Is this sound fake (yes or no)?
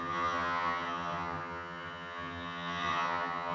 yes